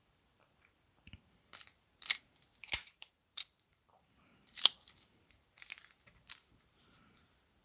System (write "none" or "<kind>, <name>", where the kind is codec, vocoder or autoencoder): vocoder, BigVGAN v2